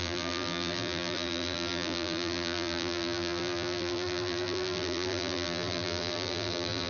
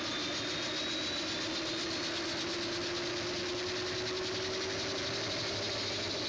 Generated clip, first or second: first